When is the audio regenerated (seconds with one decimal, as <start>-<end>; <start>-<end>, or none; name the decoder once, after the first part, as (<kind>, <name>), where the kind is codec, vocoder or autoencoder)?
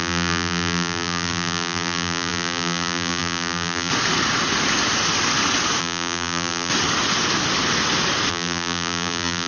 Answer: 0.0-3.9 (vocoder, BigVGAN v2); 5.8-6.7; 8.3-9.5